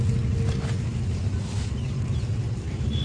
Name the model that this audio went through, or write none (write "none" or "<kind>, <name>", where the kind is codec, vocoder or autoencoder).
none